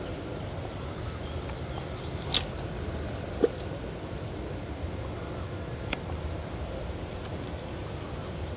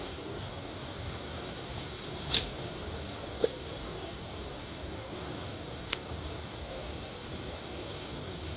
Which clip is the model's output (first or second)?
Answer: second